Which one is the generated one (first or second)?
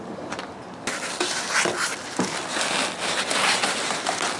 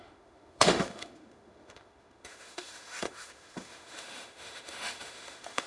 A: second